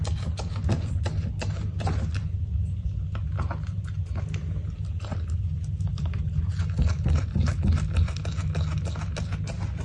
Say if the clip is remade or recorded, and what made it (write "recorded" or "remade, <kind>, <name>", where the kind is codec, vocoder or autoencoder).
recorded